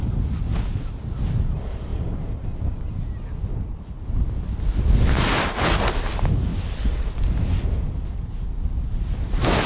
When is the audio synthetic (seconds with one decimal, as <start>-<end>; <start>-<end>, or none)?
none

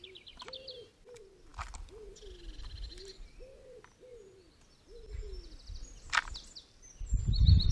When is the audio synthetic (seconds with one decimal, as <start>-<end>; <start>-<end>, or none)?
none

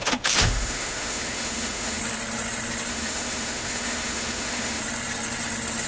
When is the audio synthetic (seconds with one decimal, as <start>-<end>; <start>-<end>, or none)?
0.0-2.0; 2.9-4.8

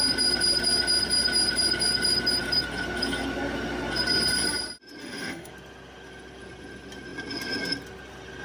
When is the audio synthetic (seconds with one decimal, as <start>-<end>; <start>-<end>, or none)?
5.0-5.5